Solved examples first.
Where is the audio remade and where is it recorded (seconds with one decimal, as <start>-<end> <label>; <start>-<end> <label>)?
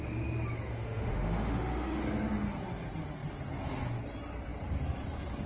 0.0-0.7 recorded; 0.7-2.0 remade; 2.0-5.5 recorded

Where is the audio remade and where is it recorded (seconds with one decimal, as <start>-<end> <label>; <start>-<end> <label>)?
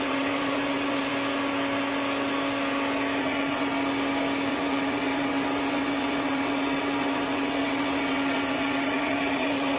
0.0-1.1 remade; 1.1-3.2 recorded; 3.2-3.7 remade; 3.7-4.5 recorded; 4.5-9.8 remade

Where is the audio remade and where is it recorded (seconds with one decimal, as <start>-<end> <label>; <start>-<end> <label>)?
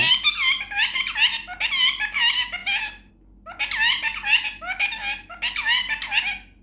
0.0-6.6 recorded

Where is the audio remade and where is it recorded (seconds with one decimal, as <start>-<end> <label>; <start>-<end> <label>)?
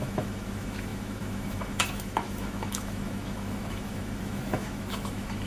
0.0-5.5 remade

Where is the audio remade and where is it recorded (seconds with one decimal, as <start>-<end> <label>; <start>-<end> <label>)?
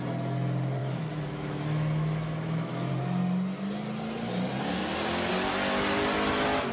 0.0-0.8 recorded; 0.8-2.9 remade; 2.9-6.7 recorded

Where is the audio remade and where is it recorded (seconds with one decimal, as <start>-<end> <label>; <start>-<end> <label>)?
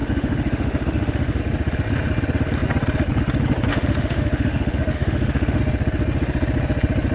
0.0-1.4 remade; 1.4-3.7 recorded; 3.7-5.6 remade; 5.6-7.1 recorded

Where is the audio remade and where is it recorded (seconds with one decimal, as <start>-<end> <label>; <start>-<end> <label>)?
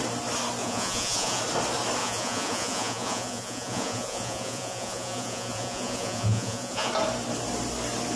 0.0-0.6 recorded; 0.6-1.4 remade; 1.4-2.0 recorded; 2.0-6.9 remade; 6.9-8.2 recorded